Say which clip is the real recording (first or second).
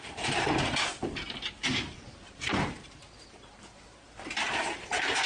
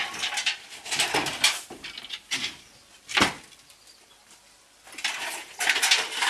second